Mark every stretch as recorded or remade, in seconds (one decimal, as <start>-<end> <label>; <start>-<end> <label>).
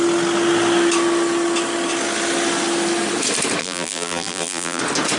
0.0-3.6 recorded; 3.6-4.8 remade; 4.8-5.2 recorded